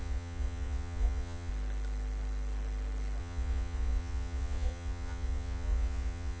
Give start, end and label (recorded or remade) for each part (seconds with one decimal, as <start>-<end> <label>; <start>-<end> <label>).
0.0-1.5 remade; 1.5-3.2 recorded; 3.2-6.4 remade